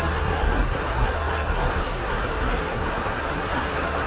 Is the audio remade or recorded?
remade